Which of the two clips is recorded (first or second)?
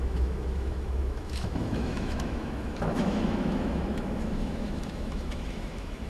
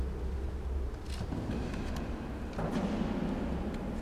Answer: second